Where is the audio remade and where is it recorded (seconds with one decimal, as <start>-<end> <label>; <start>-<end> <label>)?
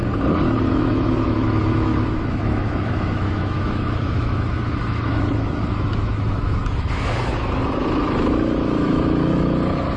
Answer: 0.0-0.7 recorded; 0.7-10.0 remade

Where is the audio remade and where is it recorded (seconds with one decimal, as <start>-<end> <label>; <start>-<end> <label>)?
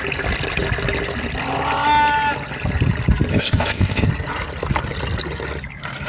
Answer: 0.0-3.3 recorded; 3.3-4.1 remade; 4.1-6.1 recorded